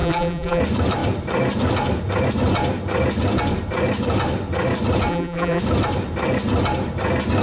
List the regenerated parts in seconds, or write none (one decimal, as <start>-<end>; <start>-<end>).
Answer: 0.0-0.6; 5.1-5.6